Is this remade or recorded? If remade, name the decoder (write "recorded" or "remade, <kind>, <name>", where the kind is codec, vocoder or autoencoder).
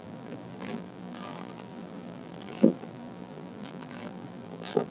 remade, vocoder, BigVGAN v2